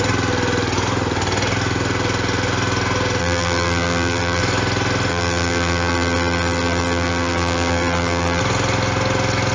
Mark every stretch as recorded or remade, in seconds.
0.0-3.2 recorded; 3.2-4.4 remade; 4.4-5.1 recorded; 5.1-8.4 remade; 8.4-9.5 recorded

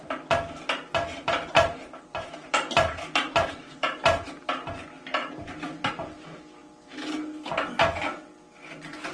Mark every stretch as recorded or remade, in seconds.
0.0-1.1 recorded; 1.1-4.3 remade; 4.3-5.2 recorded; 5.2-5.9 remade; 5.9-9.1 recorded

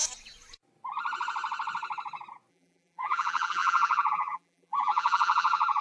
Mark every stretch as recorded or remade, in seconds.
0.0-2.5 recorded; 2.5-5.8 remade